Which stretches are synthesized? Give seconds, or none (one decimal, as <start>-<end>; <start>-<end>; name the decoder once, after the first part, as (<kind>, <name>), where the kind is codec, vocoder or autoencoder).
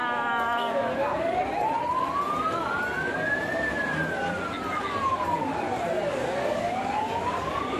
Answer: 0.0-1.4 (codec, DAC); 6.1-7.8